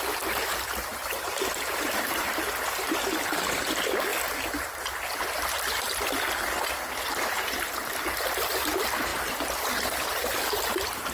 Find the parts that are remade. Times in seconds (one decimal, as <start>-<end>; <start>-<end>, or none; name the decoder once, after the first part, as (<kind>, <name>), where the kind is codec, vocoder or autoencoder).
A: 0.9-2.2 (vocoder, BigVGAN v2)